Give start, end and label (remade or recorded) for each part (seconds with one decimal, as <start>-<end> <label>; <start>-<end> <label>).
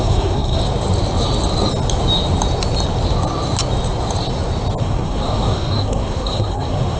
0.0-0.6 remade; 0.6-4.8 recorded; 4.8-7.0 remade